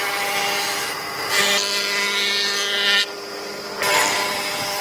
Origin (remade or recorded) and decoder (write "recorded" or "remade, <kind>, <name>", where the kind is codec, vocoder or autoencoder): recorded